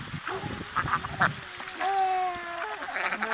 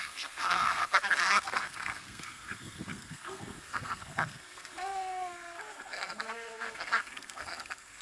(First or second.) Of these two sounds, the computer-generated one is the second